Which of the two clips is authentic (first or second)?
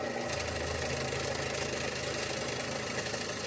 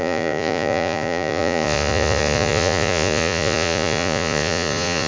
first